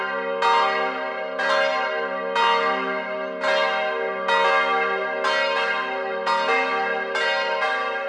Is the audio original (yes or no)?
yes